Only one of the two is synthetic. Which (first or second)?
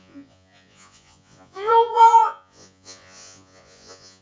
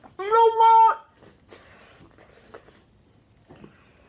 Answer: first